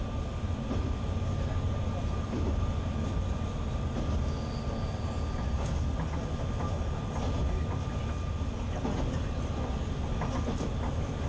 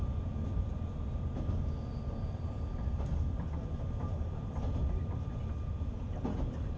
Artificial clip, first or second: second